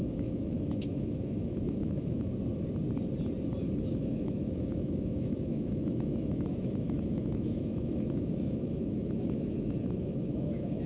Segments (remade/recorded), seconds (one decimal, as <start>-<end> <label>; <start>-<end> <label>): 0.0-2.3 remade; 2.3-3.9 recorded; 3.9-10.9 remade